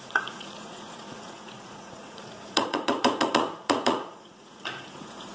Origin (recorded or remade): remade